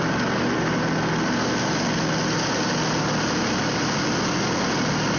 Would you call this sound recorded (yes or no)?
yes